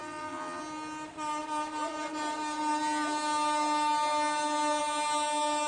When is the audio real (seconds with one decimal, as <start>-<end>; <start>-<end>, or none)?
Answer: 0.6-5.7